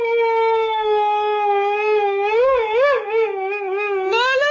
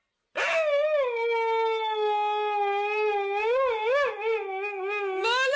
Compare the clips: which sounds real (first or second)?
second